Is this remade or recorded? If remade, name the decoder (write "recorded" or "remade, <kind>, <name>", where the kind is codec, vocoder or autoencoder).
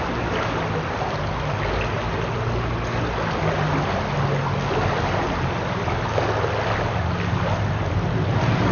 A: recorded